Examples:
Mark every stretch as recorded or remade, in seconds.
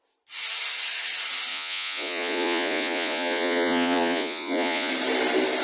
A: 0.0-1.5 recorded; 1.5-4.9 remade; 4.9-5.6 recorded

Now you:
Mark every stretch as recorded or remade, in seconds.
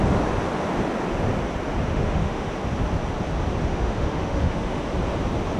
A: 0.0-1.9 recorded; 1.9-2.5 remade; 2.5-3.7 recorded; 3.7-4.8 remade; 4.8-5.6 recorded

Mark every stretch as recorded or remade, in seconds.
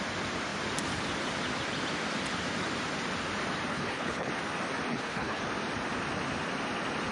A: 0.0-3.7 recorded; 3.7-4.3 remade; 4.3-4.9 recorded; 4.9-5.4 remade; 5.4-7.1 recorded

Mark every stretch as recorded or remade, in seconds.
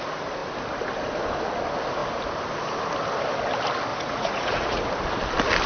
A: 0.0-3.9 recorded; 3.9-4.8 remade; 4.8-5.7 recorded